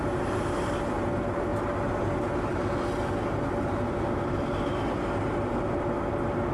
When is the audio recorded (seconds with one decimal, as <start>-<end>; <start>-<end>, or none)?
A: 0.0-6.5

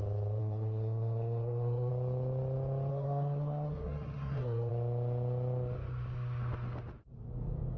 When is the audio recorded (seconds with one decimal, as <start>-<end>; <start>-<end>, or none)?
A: 0.0-0.4; 1.9-2.9; 4.7-7.8

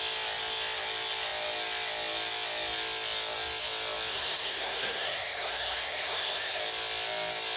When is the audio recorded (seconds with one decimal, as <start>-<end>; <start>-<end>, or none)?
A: 0.0-4.1; 6.6-7.6

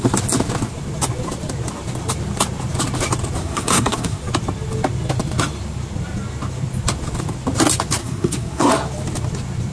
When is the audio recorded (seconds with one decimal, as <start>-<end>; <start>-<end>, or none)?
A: 0.0-3.4; 4.2-8.0; 8.7-9.7